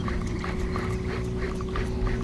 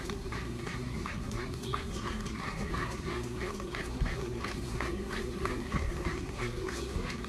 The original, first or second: first